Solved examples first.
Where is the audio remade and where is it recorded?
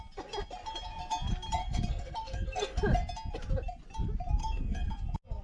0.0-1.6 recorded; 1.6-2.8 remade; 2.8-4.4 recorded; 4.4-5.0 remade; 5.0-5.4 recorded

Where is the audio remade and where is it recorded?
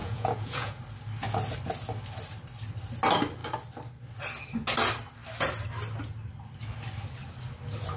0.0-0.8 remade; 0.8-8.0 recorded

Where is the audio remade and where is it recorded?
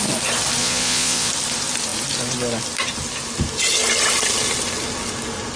0.0-0.6 recorded; 0.6-1.3 remade; 1.3-5.6 recorded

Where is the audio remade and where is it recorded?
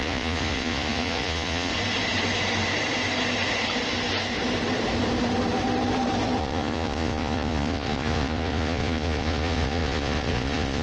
0.0-1.7 remade; 1.7-6.4 recorded; 6.4-10.8 remade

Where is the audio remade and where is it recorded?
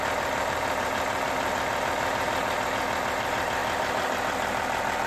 0.0-3.6 remade; 3.6-5.1 recorded